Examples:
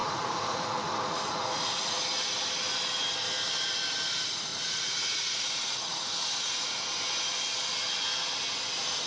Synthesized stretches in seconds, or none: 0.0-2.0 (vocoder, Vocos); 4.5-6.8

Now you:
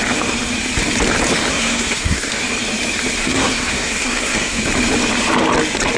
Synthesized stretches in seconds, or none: 1.5-2.3 (codec, SNAC); 3.2-4.6